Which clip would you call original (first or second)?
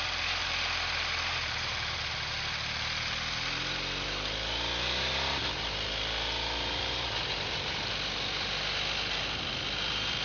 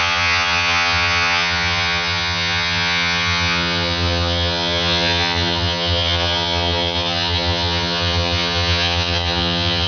first